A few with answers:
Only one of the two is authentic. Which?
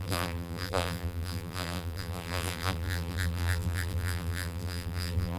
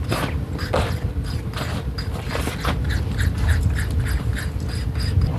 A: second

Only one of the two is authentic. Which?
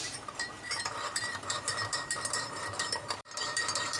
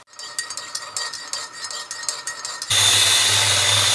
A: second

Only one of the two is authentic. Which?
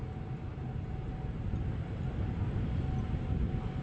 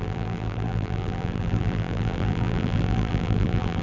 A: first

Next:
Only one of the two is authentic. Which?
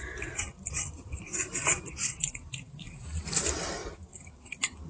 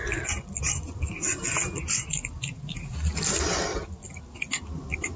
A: second